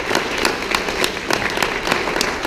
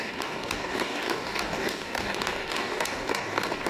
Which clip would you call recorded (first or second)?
first